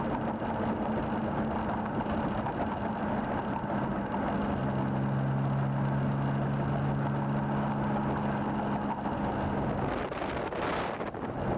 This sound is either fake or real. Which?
real